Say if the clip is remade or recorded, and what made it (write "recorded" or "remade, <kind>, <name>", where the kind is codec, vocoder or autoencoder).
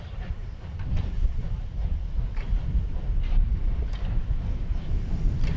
remade, vocoder, BigVGAN v2